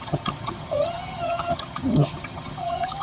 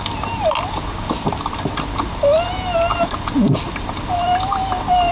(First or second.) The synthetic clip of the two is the first